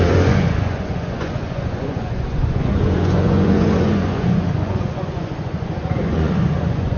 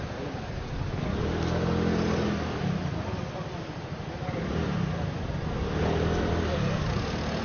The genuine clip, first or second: second